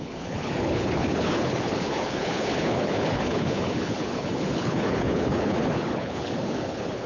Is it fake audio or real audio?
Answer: fake